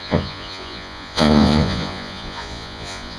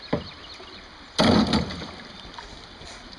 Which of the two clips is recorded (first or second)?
second